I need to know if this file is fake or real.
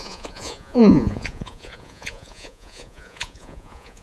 fake